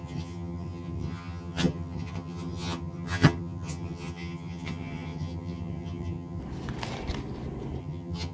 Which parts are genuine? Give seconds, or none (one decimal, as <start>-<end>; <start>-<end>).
6.4-7.8